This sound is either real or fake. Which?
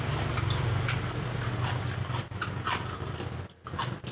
real